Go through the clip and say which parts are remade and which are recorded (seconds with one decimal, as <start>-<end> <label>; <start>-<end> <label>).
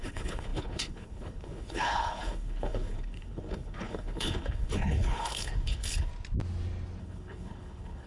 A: 0.0-6.1 remade; 6.1-7.0 recorded; 7.0-8.1 remade